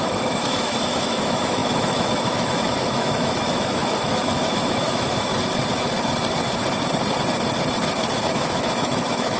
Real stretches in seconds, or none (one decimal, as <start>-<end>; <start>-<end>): 5.3-8.2